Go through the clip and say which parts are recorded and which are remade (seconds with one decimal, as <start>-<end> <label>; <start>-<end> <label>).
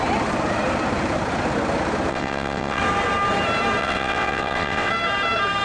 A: 0.0-2.1 recorded; 2.1-2.8 remade; 2.8-3.8 recorded; 3.8-4.9 remade; 4.9-5.6 recorded